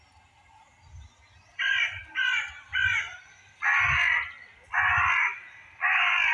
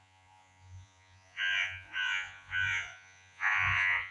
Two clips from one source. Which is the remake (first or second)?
second